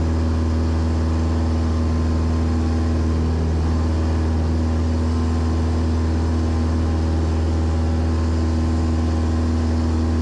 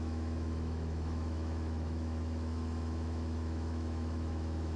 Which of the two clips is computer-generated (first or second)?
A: second